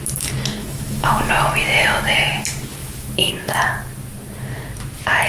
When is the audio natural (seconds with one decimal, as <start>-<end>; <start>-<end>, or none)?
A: 0.0-0.6; 1.3-2.8; 3.3-5.3